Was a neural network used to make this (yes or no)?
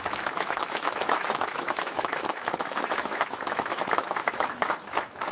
yes